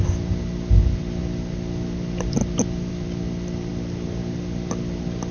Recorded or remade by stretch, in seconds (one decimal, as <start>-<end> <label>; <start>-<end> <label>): 0.0-5.3 recorded